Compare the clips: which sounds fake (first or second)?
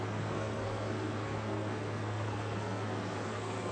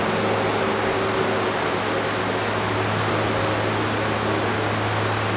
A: first